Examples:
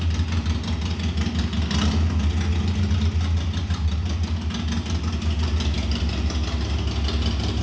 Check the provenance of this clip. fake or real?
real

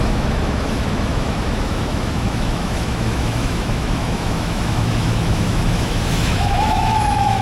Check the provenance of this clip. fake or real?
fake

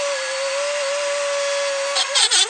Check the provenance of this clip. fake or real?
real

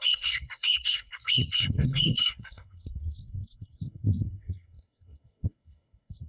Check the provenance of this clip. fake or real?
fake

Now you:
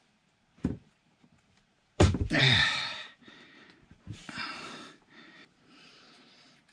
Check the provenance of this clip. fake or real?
fake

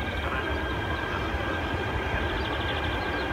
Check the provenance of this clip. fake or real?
real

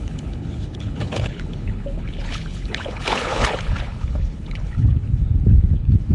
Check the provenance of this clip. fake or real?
fake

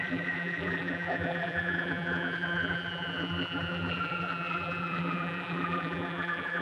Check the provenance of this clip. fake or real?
fake